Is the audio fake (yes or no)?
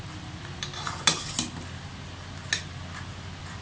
no